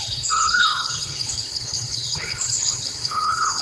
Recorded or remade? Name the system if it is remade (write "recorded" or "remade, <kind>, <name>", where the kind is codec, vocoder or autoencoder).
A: remade, codec, HILCodec